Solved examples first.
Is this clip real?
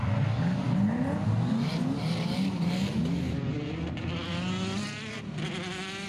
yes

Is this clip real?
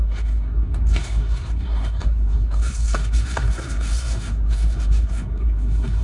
no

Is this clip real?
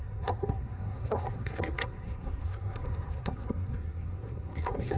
no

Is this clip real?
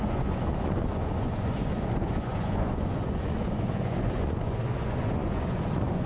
no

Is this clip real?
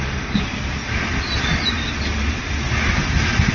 yes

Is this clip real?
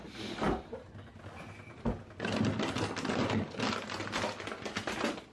yes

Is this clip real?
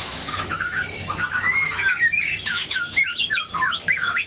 no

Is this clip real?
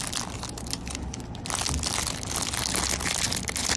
yes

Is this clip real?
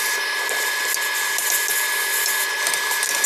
yes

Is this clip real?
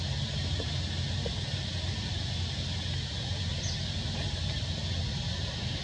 yes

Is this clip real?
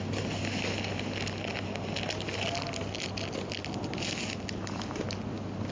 yes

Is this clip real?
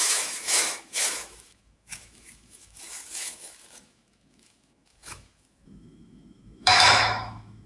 no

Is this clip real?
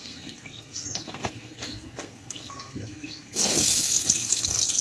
no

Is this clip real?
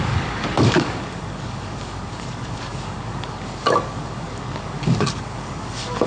no